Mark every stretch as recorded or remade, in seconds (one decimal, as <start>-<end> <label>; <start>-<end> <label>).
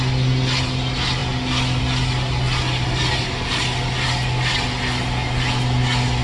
0.0-6.2 recorded